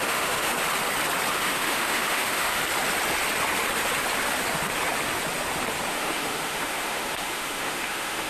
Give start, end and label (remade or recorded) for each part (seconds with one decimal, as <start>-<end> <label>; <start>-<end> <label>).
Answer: 0.0-0.5 remade; 0.5-1.3 recorded; 1.3-2.6 remade; 2.6-5.9 recorded; 5.9-8.3 remade